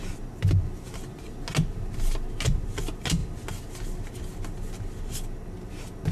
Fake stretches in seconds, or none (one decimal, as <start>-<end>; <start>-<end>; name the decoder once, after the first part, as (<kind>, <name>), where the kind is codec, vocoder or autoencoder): none

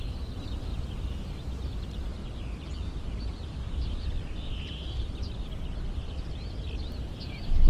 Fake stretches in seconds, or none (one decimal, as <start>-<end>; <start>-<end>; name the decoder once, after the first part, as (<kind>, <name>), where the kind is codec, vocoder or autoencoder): none